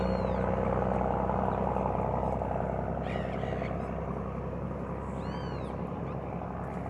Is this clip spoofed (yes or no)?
no